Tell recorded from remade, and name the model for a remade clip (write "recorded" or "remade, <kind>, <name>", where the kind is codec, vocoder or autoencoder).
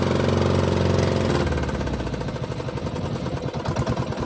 recorded